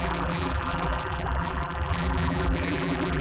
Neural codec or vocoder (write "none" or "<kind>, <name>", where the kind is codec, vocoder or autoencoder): vocoder, BigVGAN v2